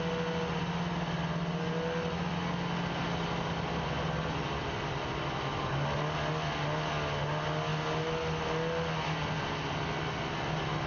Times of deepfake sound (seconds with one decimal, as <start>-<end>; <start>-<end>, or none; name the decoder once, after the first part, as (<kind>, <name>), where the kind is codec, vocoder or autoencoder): none